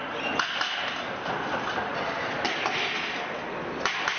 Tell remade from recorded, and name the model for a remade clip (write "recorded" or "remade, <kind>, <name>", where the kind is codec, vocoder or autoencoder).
recorded